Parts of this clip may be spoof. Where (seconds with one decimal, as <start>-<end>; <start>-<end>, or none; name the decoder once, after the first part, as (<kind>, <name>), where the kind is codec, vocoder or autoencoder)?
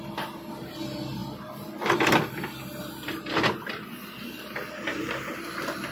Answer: none